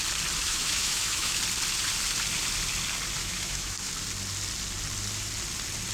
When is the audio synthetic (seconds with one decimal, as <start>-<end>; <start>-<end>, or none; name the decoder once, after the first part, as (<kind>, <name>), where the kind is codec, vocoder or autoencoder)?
0.4-1.4 (autoencoder, DAC-VAE); 3.2-3.9